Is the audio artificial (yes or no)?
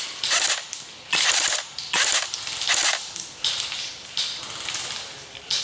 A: yes